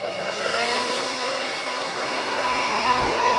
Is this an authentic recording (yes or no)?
no